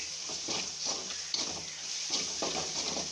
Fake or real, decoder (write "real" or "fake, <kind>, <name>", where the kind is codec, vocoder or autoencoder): real